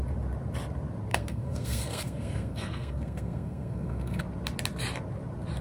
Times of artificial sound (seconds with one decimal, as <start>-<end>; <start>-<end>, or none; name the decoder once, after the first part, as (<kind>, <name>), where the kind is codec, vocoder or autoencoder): 1.1-4.2 (codec, SNAC)